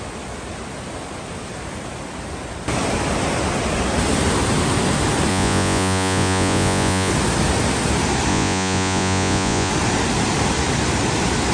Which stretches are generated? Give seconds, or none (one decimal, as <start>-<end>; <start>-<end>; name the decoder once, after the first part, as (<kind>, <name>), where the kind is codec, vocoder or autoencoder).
5.3-7.1 (vocoder, Vocos); 8.3-9.7